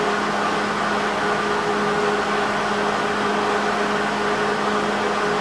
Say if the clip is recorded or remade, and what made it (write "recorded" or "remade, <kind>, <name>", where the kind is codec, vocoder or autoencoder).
recorded